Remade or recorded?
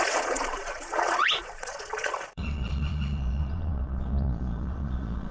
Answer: remade